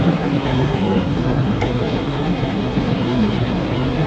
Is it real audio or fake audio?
fake